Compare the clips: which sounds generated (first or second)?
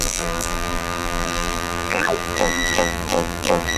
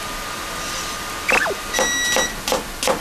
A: first